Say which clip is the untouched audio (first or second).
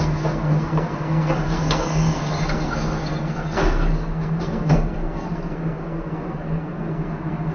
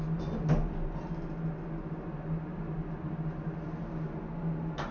second